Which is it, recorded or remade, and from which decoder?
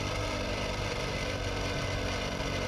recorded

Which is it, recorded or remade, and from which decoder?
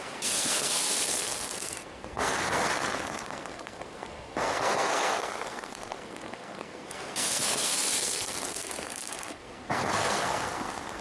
remade, codec, SNAC